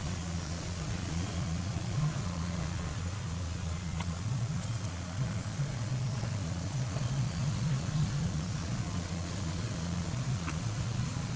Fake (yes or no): yes